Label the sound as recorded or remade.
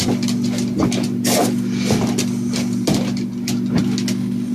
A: recorded